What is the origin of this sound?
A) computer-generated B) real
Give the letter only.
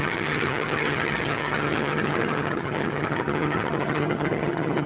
A